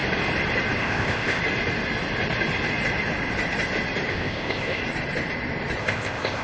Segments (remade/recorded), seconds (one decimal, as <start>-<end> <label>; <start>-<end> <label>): 0.0-0.8 recorded; 0.8-1.4 remade; 1.4-4.1 recorded; 4.1-4.8 remade; 4.8-5.8 recorded; 5.8-6.4 remade

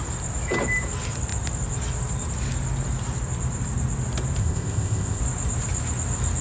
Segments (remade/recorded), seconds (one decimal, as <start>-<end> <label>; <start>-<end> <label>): 0.0-4.4 recorded; 4.4-5.2 remade; 5.2-6.4 recorded

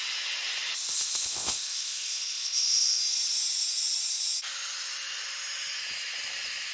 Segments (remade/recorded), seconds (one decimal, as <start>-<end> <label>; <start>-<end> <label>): 0.0-0.9 recorded; 0.9-3.0 remade; 3.0-6.7 recorded

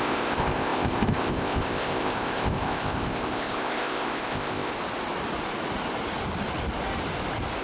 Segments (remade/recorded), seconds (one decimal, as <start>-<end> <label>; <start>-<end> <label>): 0.0-4.7 remade; 4.7-7.6 recorded